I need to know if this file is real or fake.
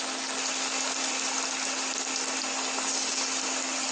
real